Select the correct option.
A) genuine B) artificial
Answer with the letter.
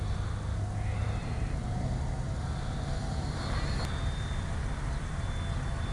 A